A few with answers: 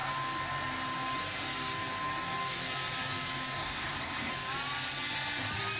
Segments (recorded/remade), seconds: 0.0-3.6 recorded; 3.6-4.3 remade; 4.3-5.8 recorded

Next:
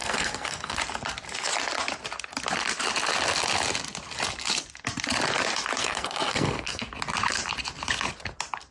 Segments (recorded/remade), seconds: 0.0-0.8 remade; 0.8-5.8 recorded; 5.8-6.9 remade; 6.9-8.7 recorded

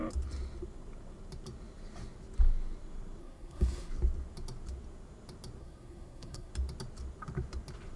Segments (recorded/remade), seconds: 0.0-3.2 recorded; 3.2-3.9 remade; 3.9-5.6 recorded; 5.6-6.5 remade; 6.5-8.0 recorded

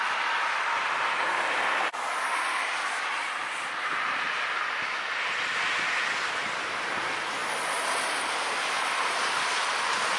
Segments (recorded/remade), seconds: 0.0-10.2 recorded

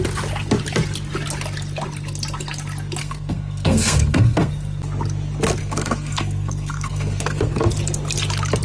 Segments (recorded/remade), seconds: 0.0-3.0 recorded; 3.0-4.5 remade; 4.5-5.6 recorded; 5.6-7.6 remade; 7.6-8.6 recorded

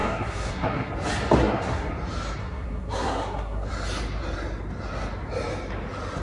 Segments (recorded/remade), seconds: 0.0-0.9 remade; 0.9-1.4 recorded; 1.4-1.9 remade; 1.9-2.4 recorded; 2.4-3.7 remade; 3.7-6.2 recorded